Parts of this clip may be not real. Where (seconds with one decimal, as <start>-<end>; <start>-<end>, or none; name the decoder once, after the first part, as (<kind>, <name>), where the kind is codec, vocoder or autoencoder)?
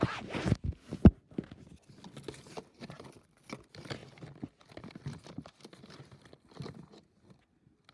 none